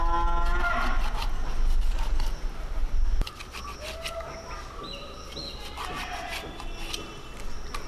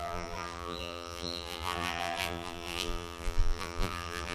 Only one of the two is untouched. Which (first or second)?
first